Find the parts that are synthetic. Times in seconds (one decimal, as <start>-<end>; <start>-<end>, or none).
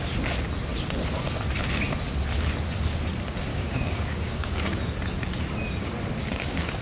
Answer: 3.5-4.8; 6.2-6.8